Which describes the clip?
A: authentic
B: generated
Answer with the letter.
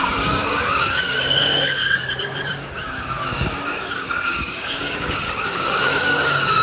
B